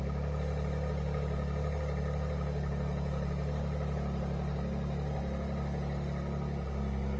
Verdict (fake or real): real